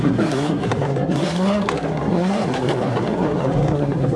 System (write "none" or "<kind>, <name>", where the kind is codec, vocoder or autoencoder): codec, SNAC